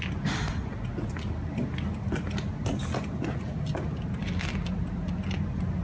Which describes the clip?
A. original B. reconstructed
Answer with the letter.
A